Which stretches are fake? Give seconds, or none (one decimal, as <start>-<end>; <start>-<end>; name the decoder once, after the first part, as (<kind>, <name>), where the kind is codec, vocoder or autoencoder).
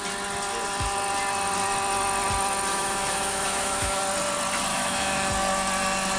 2.7-4.0 (autoencoder, DAC-VAE); 4.7-5.3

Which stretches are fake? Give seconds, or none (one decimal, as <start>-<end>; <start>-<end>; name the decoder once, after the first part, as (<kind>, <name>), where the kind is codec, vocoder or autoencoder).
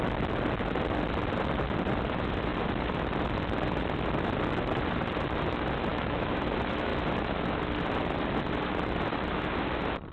5.9-6.4 (autoencoder, DAC-VAE)